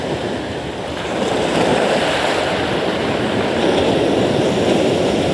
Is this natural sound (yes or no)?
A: yes